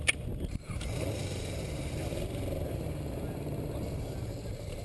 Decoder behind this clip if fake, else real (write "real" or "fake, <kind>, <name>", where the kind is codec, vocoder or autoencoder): fake, vocoder, BigVGAN v2